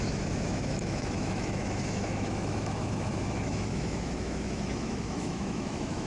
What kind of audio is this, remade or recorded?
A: remade